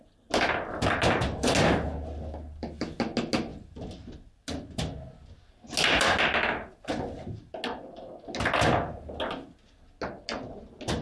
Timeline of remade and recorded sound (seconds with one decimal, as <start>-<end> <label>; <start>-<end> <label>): 0.0-11.0 recorded

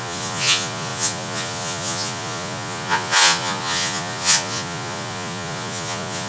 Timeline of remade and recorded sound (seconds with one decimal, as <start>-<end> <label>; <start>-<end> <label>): 0.0-6.3 remade